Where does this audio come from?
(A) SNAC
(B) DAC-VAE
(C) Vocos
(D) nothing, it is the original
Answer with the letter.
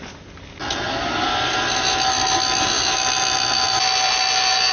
D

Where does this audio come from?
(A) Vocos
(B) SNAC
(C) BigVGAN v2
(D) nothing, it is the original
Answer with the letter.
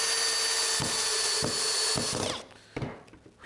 D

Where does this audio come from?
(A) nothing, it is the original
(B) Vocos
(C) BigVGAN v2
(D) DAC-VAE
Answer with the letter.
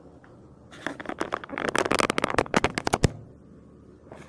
A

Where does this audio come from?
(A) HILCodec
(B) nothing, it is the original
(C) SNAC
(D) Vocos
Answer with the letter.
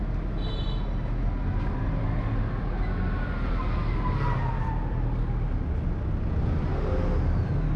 B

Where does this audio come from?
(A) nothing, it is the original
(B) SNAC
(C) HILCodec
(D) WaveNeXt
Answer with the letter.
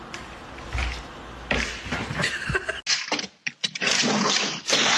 A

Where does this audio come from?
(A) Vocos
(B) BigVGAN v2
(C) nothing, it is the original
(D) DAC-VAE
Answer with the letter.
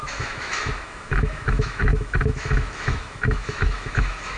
D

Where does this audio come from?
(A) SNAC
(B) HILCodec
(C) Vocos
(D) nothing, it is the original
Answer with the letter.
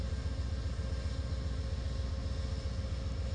D